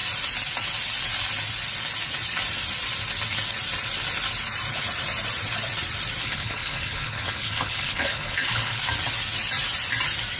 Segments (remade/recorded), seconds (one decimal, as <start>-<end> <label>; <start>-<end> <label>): 0.0-6.2 recorded; 6.2-8.8 remade; 8.8-10.4 recorded